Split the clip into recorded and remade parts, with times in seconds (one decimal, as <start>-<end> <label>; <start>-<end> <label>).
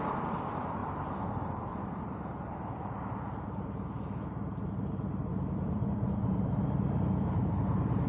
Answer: 0.0-8.1 recorded